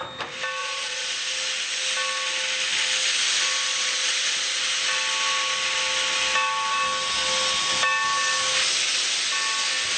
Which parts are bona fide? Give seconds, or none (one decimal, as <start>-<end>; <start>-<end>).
0.0-0.6; 1.2-3.7; 4.6-10.0